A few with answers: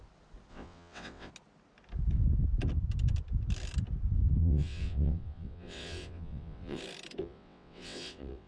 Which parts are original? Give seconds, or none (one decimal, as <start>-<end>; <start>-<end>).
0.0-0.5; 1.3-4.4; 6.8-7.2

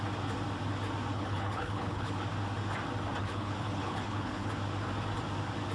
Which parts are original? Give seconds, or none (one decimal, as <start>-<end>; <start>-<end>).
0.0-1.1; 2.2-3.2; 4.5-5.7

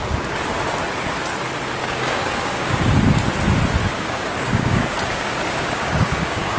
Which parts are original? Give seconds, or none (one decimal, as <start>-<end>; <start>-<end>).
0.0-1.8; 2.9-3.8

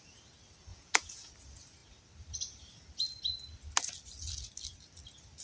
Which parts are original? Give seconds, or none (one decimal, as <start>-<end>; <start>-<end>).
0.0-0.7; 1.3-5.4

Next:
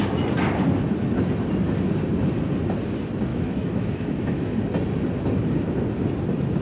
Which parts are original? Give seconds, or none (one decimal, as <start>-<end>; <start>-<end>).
0.0-3.3; 4.6-6.6